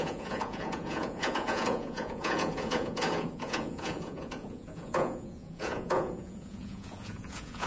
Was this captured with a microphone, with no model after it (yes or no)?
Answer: no